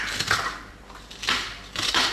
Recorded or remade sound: recorded